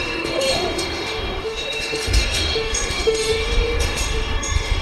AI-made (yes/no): yes